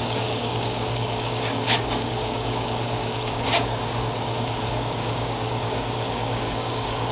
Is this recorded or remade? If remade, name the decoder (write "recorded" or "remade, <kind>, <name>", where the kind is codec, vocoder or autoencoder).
remade, codec, DAC